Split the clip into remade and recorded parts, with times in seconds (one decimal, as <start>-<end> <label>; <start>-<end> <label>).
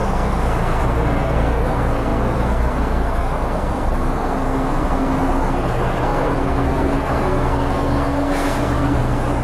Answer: 0.0-9.4 remade